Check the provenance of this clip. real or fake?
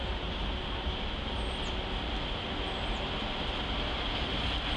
real